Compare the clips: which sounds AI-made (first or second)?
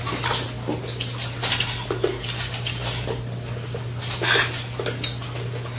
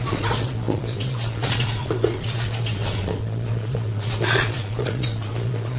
second